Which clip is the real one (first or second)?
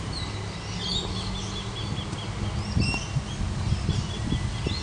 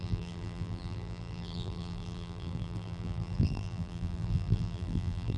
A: first